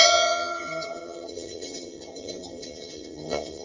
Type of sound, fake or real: fake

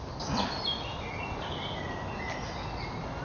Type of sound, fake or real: real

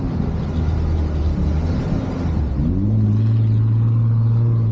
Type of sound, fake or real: real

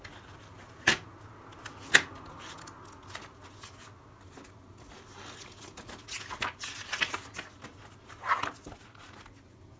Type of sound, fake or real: real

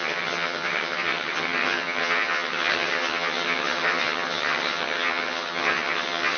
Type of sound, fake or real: fake